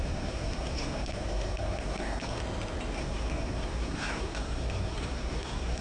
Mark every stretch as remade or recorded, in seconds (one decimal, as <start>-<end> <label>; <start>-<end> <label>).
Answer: 0.0-2.4 remade; 2.4-3.0 recorded; 3.0-5.8 remade

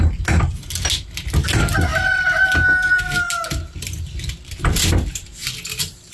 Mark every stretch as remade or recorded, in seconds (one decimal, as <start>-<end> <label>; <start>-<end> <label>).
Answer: 0.0-6.1 recorded

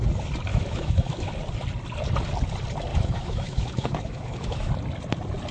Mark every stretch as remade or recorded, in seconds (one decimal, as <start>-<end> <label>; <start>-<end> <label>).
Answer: 0.0-0.5 recorded; 0.5-1.3 remade; 1.3-2.9 recorded; 2.9-4.7 remade; 4.7-5.5 recorded

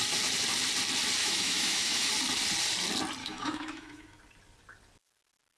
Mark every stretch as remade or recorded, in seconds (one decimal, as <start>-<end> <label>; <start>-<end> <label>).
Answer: 0.0-1.2 recorded; 1.2-2.1 remade; 2.1-3.2 recorded; 3.2-4.2 remade; 4.2-5.6 recorded

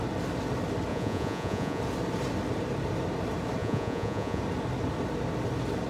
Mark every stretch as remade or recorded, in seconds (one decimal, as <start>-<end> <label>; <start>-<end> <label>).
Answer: 0.0-0.9 recorded; 0.9-1.8 remade; 1.8-3.6 recorded; 3.6-4.4 remade; 4.4-5.9 recorded

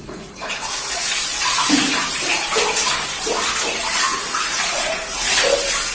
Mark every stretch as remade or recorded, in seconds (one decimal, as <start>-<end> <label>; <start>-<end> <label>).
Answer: 0.0-1.7 remade; 1.7-4.1 recorded; 4.1-5.4 remade; 5.4-5.9 recorded

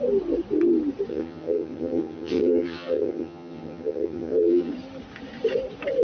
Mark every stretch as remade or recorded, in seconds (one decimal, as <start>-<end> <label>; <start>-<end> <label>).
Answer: 0.0-1.1 recorded; 1.1-4.7 remade; 4.7-6.0 recorded